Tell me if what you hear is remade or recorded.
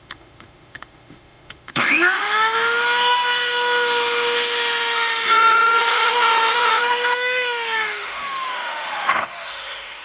remade